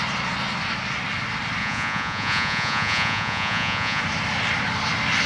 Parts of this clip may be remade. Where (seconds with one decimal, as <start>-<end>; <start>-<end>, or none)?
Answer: 1.6-4.0